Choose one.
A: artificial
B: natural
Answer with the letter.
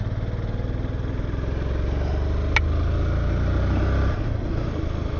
B